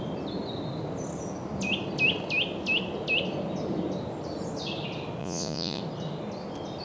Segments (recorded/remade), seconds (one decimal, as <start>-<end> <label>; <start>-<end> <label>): 0.0-5.2 recorded; 5.2-5.8 remade; 5.8-6.8 recorded